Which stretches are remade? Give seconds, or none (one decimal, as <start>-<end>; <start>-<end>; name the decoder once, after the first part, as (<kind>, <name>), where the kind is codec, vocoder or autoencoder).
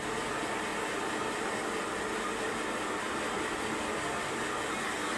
none